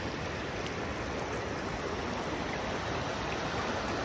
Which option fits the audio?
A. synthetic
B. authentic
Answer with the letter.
B